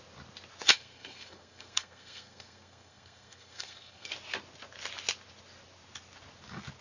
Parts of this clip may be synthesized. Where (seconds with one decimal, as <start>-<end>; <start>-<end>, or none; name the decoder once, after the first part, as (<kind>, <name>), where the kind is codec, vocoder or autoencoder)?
0.7-4.1 (codec, SNAC)